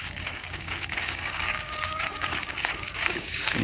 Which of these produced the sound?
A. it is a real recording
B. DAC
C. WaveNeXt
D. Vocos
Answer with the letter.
B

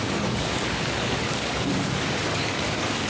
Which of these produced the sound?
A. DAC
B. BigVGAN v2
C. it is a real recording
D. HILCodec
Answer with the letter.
A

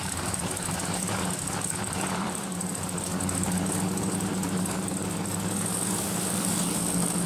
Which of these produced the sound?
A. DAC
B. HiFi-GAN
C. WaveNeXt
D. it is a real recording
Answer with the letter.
A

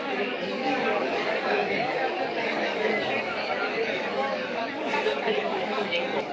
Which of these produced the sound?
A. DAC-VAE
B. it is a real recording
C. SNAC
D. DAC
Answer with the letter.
D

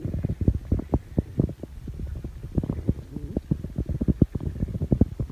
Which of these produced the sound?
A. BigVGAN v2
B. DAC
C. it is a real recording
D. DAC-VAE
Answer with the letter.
C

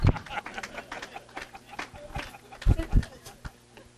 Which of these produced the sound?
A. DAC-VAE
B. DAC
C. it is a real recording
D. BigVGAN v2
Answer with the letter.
C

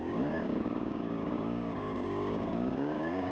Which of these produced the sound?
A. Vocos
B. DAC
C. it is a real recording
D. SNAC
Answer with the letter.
B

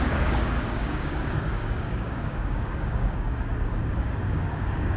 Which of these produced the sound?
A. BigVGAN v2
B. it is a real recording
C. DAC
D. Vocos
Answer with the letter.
C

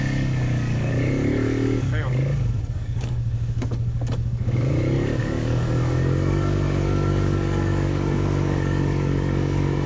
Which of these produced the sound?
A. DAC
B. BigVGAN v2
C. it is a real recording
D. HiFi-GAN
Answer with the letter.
A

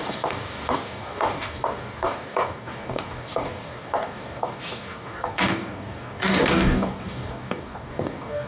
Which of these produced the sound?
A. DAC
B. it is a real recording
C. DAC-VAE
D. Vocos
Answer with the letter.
A